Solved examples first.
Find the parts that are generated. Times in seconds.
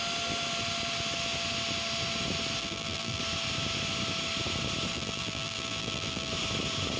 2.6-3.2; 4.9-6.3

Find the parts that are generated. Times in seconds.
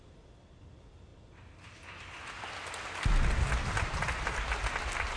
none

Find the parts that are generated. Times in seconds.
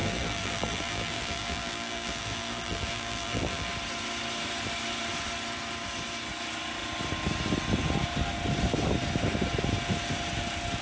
0.0-3.7